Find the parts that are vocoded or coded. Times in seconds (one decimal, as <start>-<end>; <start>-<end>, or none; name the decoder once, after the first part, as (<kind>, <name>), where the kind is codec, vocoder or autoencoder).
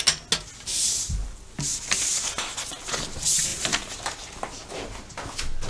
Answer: none